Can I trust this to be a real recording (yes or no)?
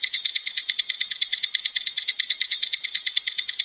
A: no